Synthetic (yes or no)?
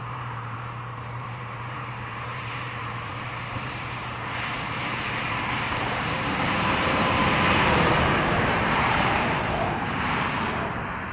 yes